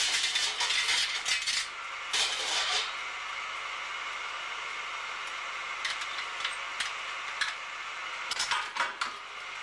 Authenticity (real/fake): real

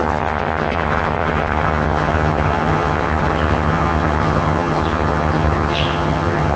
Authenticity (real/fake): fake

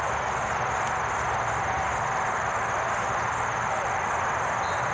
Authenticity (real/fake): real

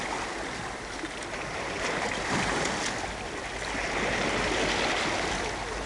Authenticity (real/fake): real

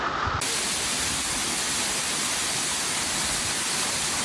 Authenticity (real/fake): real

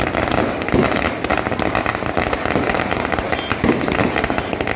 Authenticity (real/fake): real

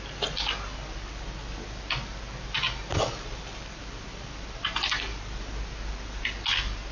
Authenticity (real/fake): real